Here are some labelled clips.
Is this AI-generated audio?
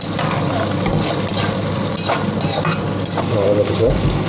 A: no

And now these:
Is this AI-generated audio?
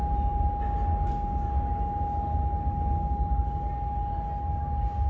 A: no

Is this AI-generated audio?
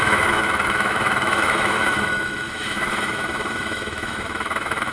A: yes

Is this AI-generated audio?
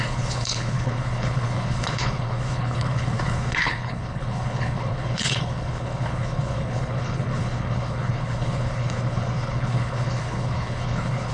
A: yes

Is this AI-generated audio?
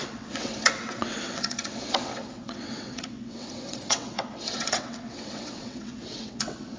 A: yes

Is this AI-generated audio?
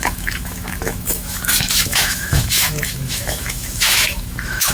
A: yes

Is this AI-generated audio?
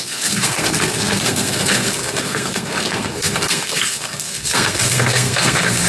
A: yes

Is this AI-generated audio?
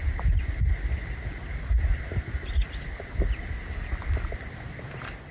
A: no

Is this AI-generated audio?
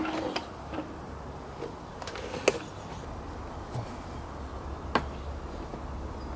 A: no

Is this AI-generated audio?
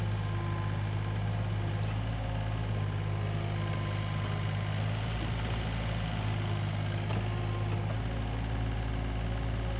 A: no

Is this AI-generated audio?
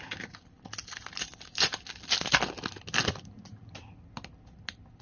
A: no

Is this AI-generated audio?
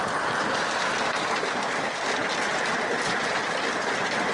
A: no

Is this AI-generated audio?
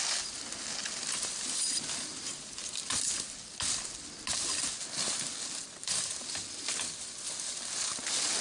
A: no